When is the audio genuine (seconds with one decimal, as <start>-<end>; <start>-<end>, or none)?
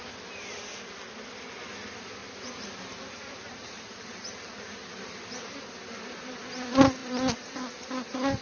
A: 0.0-2.2; 3.8-8.4